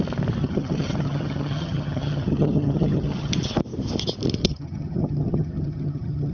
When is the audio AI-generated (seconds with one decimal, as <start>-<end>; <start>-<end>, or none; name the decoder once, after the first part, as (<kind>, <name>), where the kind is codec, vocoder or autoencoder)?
0.4-3.3 (vocoder, HiFi-GAN); 4.4-6.3